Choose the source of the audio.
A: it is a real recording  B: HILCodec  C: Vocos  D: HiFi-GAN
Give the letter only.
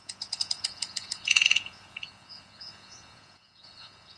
C